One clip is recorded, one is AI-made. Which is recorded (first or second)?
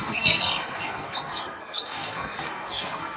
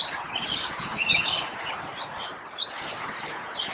second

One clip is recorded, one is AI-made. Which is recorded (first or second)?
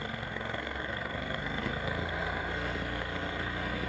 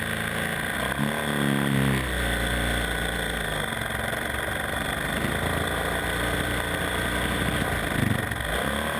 second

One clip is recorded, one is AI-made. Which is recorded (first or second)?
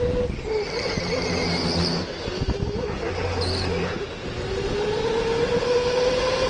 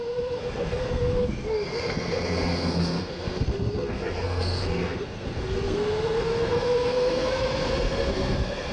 first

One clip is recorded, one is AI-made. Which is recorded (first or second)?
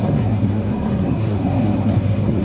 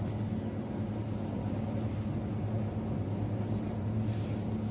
second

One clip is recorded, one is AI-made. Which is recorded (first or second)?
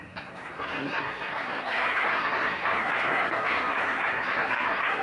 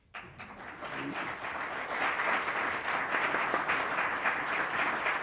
second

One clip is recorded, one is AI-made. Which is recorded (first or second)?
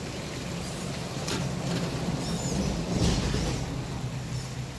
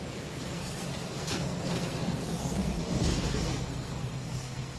first